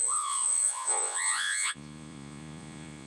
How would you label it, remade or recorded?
remade